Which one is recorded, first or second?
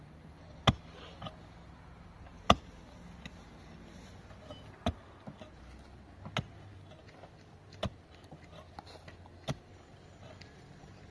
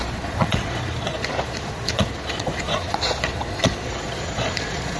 first